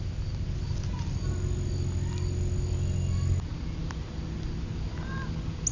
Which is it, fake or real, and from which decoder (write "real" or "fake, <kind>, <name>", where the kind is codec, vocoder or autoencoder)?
real